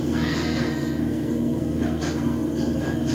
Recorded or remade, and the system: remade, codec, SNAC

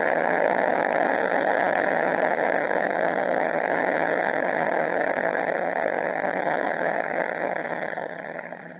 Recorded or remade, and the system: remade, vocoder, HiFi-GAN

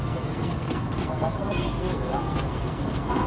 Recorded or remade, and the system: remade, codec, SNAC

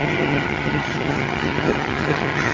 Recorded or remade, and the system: remade, vocoder, HiFi-GAN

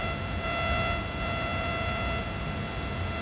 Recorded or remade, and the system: recorded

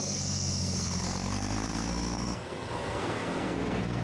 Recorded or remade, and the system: remade, codec, SNAC